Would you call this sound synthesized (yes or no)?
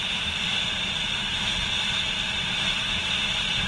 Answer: no